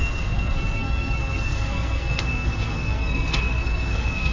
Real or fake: fake